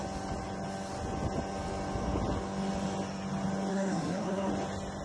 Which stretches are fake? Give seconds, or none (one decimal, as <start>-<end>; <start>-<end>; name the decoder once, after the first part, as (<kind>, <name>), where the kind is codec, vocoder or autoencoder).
3.7-4.5 (codec, SNAC)